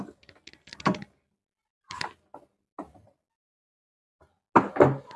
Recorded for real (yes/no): yes